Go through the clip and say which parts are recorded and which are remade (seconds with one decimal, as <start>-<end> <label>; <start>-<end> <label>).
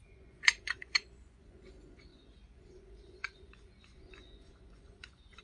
0.0-5.4 remade